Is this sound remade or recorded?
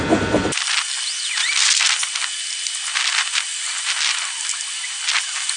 recorded